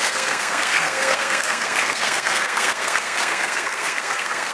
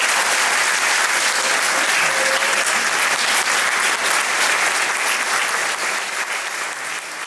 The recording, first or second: second